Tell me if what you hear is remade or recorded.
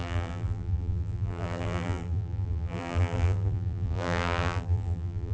remade